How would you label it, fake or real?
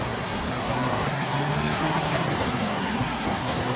fake